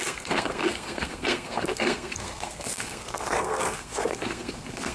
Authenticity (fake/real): fake